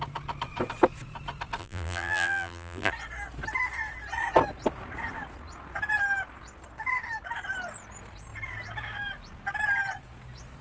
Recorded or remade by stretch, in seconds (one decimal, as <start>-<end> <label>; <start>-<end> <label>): 0.0-1.6 recorded; 1.6-2.9 remade; 2.9-10.6 recorded